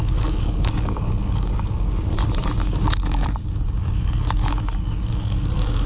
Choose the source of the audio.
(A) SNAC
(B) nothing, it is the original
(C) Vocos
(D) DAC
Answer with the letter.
D